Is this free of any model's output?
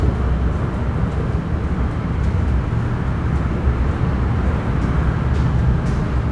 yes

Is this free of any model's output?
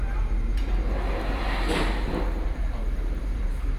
no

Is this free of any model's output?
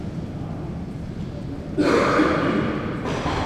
no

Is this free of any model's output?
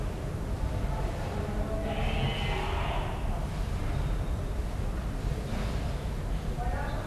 yes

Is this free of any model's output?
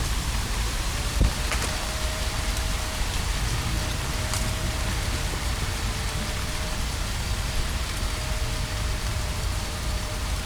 no